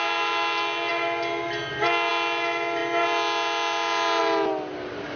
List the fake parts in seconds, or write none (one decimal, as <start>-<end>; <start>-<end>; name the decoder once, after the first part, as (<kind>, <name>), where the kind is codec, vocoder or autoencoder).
none